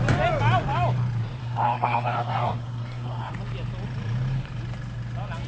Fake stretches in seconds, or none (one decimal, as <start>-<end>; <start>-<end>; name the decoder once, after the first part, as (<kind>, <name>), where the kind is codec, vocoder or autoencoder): 1.4-3.3 (codec, SNAC)